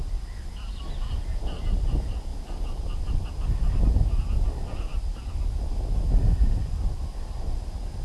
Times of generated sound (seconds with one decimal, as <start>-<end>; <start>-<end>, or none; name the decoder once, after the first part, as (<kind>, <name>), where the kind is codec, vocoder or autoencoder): none